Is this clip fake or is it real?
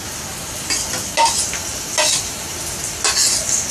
real